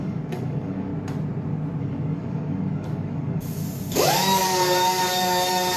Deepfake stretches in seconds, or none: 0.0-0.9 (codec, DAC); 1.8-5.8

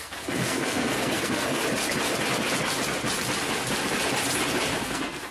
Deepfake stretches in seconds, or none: 0.0-1.6 (codec, SNAC); 4.8-5.3

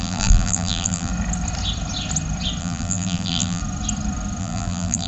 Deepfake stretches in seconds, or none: 0.0-1.1 (vocoder, BigVGAN v2); 2.6-3.6; 4.4-5.1

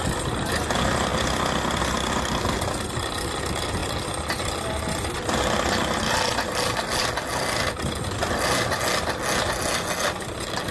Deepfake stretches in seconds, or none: none

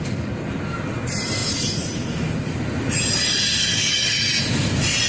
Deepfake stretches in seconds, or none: none